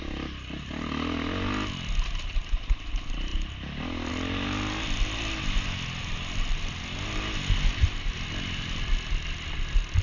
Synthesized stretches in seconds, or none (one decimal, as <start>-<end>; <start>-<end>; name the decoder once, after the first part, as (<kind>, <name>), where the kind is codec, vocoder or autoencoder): none